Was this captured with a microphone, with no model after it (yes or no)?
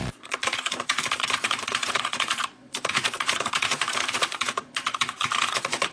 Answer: no